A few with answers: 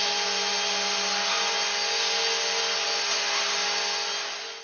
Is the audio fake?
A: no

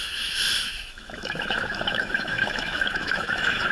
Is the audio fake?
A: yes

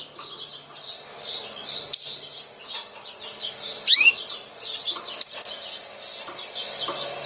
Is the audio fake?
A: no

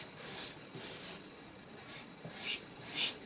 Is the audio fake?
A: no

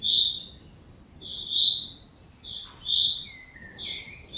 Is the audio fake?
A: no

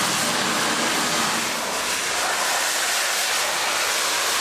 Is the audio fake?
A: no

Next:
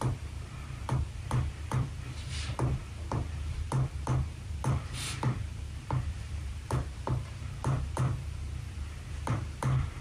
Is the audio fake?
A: yes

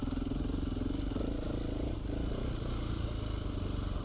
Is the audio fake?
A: no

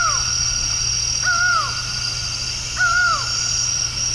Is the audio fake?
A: no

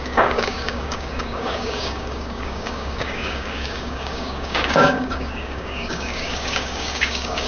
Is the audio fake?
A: yes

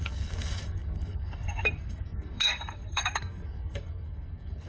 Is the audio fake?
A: yes